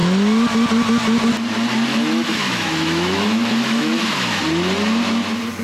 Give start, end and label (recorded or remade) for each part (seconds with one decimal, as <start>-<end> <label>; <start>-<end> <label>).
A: 0.0-1.9 recorded; 1.9-4.4 remade; 4.4-5.6 recorded